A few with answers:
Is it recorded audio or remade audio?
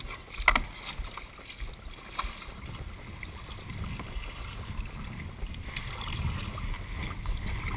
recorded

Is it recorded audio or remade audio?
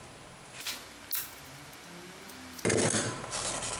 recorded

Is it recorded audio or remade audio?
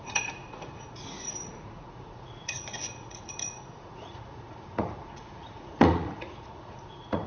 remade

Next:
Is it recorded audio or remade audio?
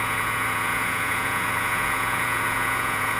remade